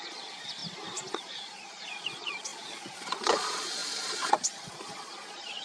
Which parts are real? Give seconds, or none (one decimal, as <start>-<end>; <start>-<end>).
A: 0.6-1.1